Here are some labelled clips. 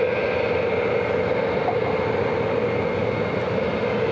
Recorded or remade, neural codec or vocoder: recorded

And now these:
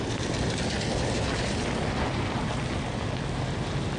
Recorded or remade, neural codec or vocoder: recorded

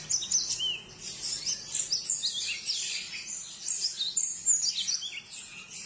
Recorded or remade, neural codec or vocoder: recorded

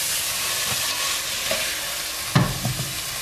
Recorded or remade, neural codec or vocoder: recorded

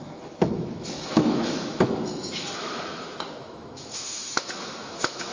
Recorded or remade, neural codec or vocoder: remade, autoencoder, DAC-VAE